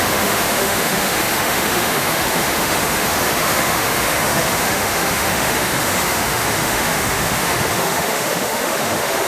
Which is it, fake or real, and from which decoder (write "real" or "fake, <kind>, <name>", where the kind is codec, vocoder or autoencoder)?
fake, autoencoder, DAC-VAE